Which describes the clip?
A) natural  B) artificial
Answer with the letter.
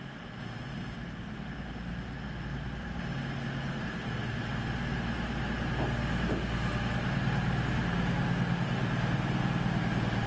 A